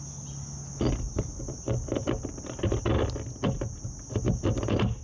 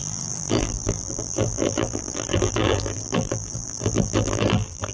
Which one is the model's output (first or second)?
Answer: second